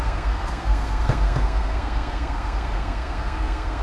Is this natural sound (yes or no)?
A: no